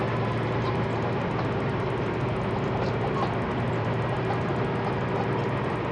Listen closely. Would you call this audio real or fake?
real